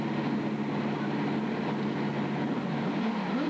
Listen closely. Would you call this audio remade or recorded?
recorded